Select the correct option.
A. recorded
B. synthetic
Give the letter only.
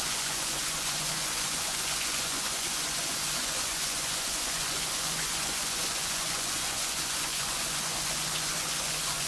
B